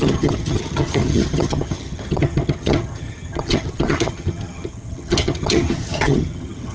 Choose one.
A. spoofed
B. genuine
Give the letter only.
A